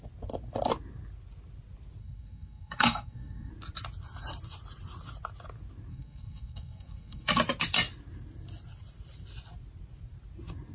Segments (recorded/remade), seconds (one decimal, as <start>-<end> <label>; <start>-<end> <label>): 0.0-2.0 recorded; 2.0-3.5 remade; 3.5-5.9 recorded; 5.9-7.4 remade; 7.4-10.7 recorded